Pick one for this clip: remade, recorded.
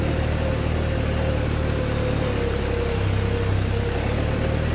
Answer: recorded